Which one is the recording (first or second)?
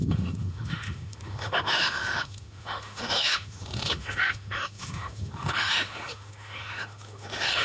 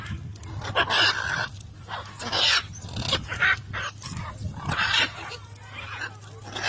second